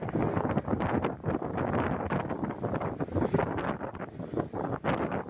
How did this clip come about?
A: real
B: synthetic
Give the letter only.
A